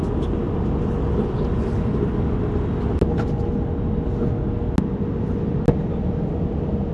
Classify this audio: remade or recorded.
recorded